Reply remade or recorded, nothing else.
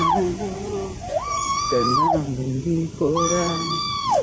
remade